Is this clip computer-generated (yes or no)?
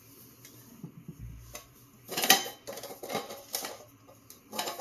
no